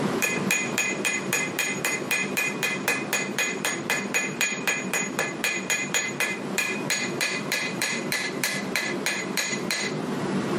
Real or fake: fake